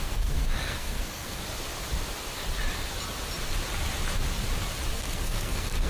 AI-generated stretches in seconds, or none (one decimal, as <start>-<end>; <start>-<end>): 0.0-1.4; 4.9-5.9